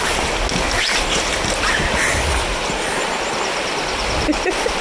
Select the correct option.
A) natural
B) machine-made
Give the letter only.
A